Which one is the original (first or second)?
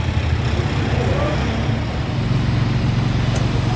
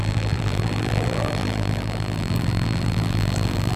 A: first